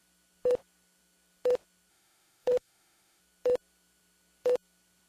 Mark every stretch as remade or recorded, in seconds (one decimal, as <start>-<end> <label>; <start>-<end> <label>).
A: 0.0-1.9 recorded; 1.9-3.2 remade; 3.2-5.1 recorded